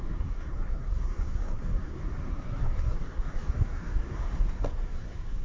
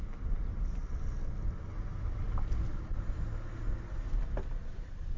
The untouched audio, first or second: second